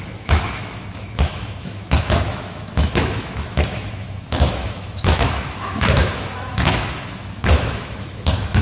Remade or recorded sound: remade